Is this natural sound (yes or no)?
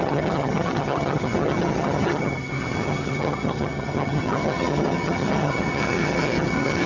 no